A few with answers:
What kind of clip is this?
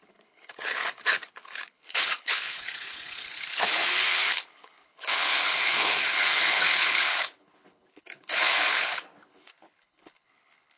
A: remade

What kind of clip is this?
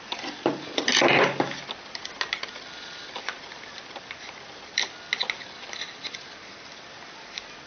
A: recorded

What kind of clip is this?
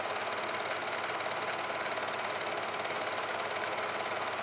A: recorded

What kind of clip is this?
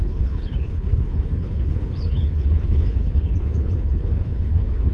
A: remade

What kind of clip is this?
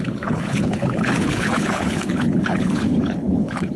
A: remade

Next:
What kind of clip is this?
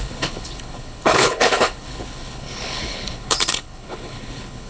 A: remade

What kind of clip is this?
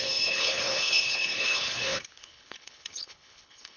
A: remade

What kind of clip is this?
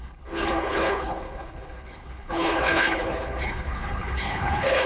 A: remade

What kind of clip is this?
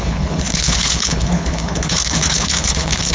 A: remade